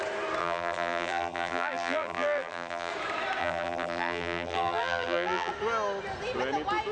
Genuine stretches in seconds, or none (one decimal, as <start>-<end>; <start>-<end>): 0.0-0.4; 2.9-3.4; 5.5-6.9